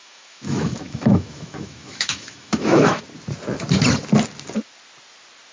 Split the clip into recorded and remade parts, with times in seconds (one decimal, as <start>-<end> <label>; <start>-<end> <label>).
0.0-3.0 remade; 3.0-5.5 recorded